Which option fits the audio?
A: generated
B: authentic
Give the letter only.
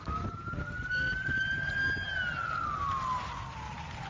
B